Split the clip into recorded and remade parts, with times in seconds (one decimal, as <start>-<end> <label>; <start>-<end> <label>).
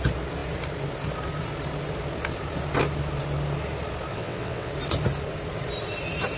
0.0-4.1 recorded; 4.1-4.7 remade; 4.7-6.4 recorded